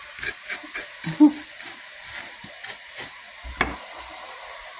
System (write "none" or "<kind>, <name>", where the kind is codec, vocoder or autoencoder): none